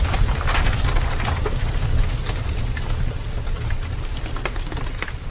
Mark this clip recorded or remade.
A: recorded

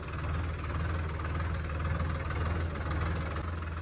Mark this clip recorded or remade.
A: recorded